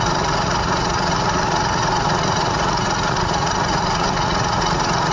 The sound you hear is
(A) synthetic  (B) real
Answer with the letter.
A